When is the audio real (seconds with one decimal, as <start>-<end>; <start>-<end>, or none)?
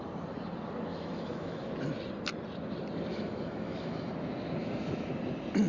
0.0-0.9; 1.7-3.1; 4.1-4.6; 5.1-5.7